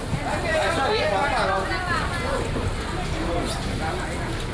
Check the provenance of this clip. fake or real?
real